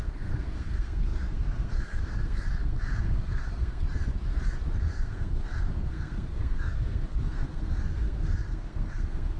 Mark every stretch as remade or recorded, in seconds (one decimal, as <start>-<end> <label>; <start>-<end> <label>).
0.0-3.8 remade; 3.8-4.8 recorded; 4.8-9.4 remade

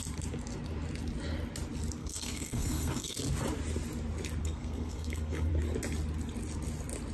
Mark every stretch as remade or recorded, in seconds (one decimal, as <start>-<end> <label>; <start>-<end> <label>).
0.0-2.0 recorded; 2.0-3.2 remade; 3.2-4.4 recorded; 4.4-5.5 remade; 5.5-7.1 recorded

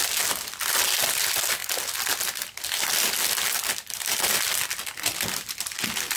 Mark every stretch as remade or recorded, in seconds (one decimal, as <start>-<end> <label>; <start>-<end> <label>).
0.0-6.2 recorded

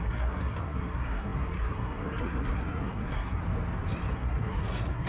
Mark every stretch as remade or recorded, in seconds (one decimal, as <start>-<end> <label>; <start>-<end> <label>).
0.0-3.4 remade; 3.4-4.1 recorded; 4.1-5.1 remade

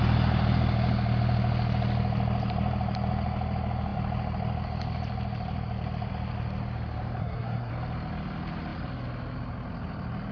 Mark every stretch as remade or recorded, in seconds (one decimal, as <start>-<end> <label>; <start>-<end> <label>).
0.0-7.2 recorded; 7.2-7.7 remade; 7.7-10.3 recorded

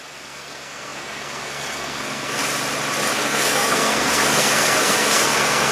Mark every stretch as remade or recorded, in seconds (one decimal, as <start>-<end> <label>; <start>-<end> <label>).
0.0-2.4 remade; 2.4-3.1 recorded; 3.1-5.7 remade

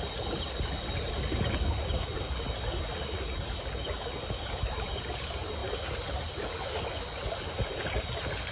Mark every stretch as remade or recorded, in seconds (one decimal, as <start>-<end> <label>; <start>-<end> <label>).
0.0-8.5 recorded

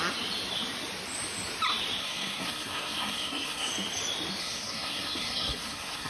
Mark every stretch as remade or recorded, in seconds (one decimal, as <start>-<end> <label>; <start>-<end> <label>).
0.0-2.0 recorded; 2.0-3.7 remade; 3.7-4.4 recorded; 4.4-6.1 remade